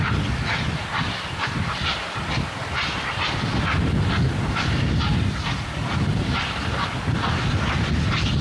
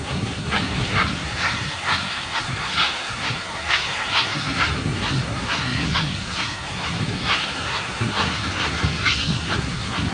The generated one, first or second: second